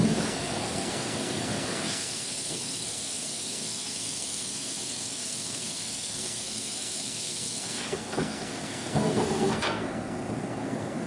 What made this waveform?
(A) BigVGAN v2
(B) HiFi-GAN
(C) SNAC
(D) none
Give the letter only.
C